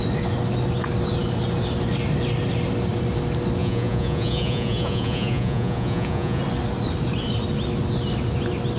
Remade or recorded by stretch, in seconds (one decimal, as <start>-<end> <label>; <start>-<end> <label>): 0.0-3.6 recorded; 3.6-6.4 remade; 6.4-8.8 recorded